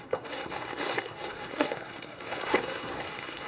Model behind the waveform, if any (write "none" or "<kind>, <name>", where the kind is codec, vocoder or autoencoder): codec, SNAC